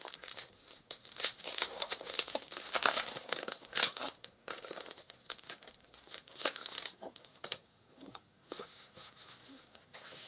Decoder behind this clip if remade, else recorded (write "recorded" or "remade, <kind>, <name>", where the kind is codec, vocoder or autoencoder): remade, codec, SNAC